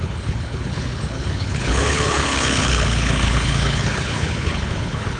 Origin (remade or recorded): remade